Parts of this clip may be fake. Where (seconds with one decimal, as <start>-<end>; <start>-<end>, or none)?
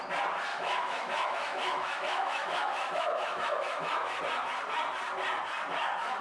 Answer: 0.5-4.2